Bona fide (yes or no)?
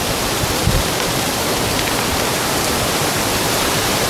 no